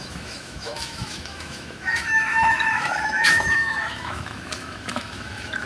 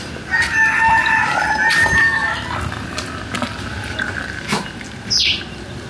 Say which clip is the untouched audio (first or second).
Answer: second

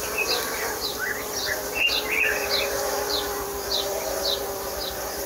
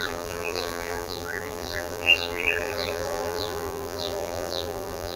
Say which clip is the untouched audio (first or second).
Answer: first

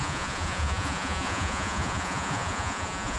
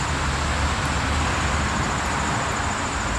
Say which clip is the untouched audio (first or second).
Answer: second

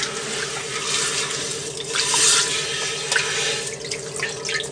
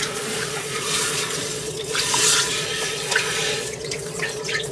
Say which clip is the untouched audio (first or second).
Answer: first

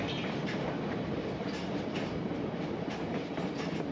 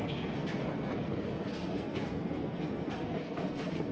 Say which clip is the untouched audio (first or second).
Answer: first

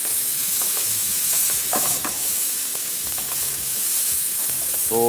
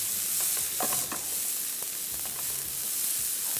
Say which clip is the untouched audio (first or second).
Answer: second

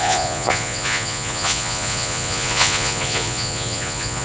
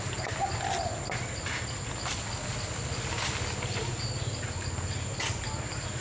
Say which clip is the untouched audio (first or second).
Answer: second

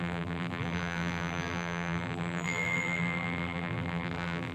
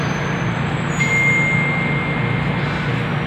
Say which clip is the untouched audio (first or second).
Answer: second